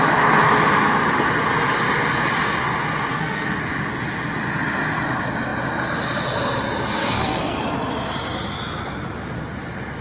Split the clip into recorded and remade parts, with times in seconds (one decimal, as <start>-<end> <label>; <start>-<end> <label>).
0.0-3.1 recorded; 3.1-3.6 remade; 3.6-7.0 recorded; 7.0-7.6 remade; 7.6-10.0 recorded